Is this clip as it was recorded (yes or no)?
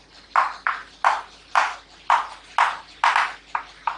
yes